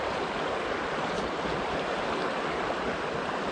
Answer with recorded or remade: recorded